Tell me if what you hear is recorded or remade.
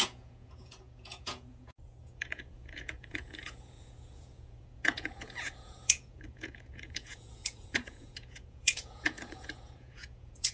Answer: remade